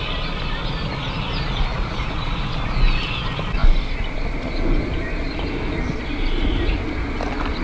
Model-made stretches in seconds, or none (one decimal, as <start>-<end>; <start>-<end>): 1.7-2.4